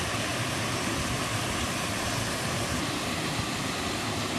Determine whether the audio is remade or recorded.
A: recorded